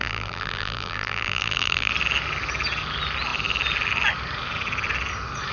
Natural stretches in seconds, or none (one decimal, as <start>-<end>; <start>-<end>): 1.9-5.5